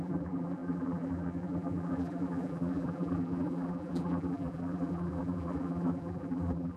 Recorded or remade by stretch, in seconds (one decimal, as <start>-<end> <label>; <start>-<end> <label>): 0.0-6.8 remade